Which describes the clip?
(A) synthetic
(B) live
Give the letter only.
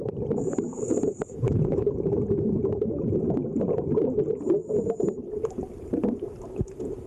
A